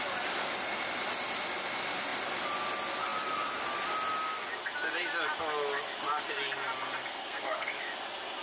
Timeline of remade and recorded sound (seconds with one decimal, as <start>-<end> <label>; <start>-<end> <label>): 0.0-7.1 recorded; 7.1-7.7 remade; 7.7-8.4 recorded